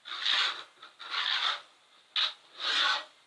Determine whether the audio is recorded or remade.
recorded